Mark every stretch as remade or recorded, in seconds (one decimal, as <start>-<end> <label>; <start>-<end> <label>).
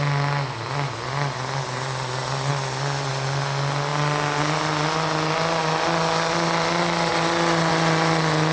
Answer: 0.0-8.5 recorded